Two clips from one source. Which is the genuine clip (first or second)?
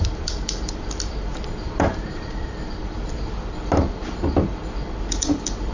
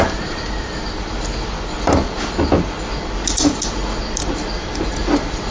second